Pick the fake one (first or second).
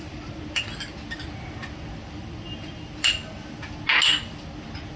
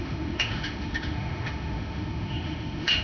second